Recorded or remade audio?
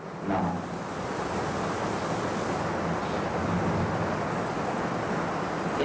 recorded